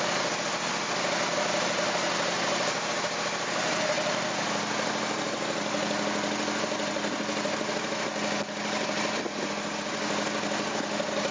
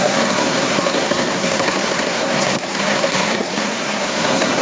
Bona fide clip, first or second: first